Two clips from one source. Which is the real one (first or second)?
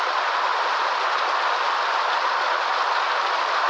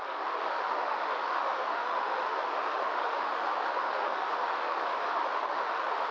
first